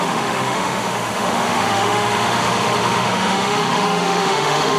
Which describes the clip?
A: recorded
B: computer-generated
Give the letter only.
B